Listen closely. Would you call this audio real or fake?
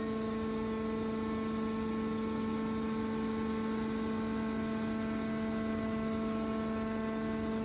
real